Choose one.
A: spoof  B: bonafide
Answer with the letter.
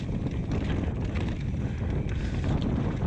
B